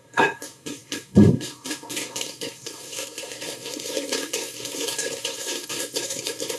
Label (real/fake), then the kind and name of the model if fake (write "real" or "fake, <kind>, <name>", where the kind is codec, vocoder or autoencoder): fake, codec, SNAC